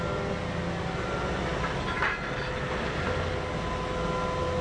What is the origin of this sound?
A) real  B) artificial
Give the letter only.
A